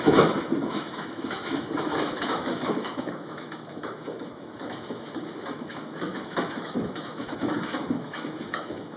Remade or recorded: remade